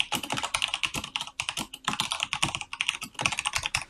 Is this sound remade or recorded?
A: recorded